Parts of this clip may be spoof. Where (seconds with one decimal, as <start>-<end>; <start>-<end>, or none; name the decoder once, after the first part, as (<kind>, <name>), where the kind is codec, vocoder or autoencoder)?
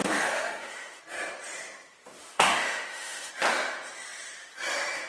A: 0.0-1.0 (autoencoder, DAC-VAE); 2.2-3.3